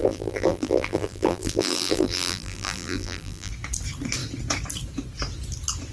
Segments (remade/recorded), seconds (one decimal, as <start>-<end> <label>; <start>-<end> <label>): 0.0-3.5 remade; 3.5-5.9 recorded